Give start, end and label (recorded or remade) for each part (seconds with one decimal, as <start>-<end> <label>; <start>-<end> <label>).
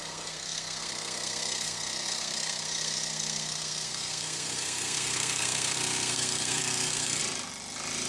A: 0.0-7.2 remade; 7.2-8.1 recorded